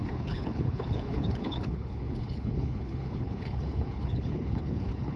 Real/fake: fake